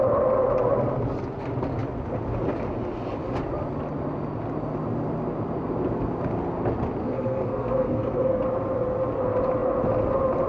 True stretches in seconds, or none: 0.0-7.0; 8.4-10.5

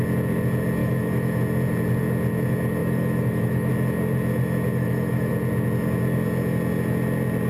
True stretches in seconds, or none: 0.0-0.8; 1.4-2.8; 3.7-4.7; 5.3-7.5

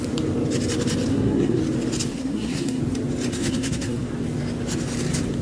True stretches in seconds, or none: 0.0-1.1; 1.6-2.1; 2.8-3.3; 4.1-5.4

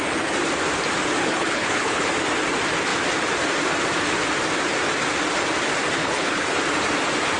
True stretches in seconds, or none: 0.0-1.2; 2.1-6.0; 6.6-7.4

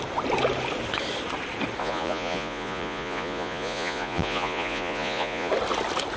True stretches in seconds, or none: 0.0-1.8; 5.5-6.2

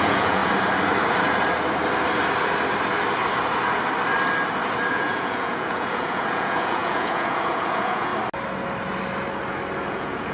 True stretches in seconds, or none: 0.4-4.9; 8.1-9.9

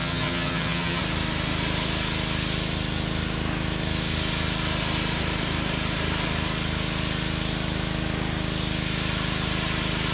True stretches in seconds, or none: 1.0-10.1

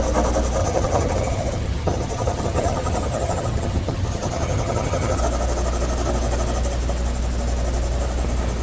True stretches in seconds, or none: 0.0-0.6; 5.2-8.6